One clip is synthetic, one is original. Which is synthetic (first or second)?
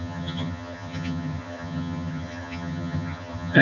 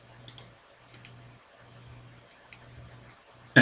first